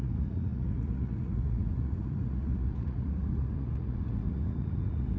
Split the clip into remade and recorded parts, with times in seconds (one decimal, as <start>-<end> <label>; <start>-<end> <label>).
0.0-5.2 remade

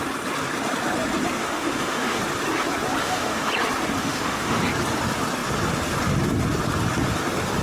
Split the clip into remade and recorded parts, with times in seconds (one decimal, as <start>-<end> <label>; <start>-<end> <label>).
0.0-1.4 recorded; 1.4-2.2 remade; 2.2-3.0 recorded; 3.0-3.5 remade; 3.5-4.0 recorded; 4.0-4.6 remade; 4.6-7.6 recorded

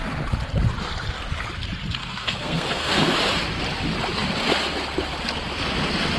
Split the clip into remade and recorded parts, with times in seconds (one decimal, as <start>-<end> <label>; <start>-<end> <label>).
0.0-2.0 recorded; 2.0-3.0 remade; 3.0-6.2 recorded

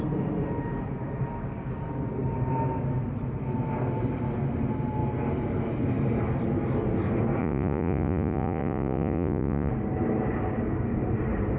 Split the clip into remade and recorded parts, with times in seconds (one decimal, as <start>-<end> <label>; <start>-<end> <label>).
0.0-7.4 recorded; 7.4-9.7 remade; 9.7-11.6 recorded

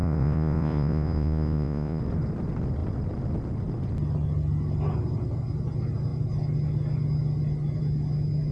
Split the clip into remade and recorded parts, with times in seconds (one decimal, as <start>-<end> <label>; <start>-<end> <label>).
0.0-2.0 remade; 2.0-8.5 recorded

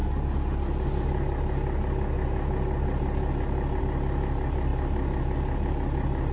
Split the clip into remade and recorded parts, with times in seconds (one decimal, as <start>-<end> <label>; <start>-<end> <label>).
0.0-6.3 recorded

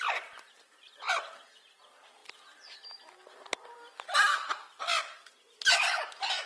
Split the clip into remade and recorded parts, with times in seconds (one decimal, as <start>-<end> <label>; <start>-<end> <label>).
0.0-6.5 recorded

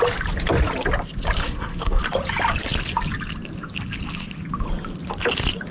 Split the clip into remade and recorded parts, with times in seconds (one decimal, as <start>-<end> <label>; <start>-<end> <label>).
0.0-1.4 recorded; 1.4-2.0 remade; 2.0-5.7 recorded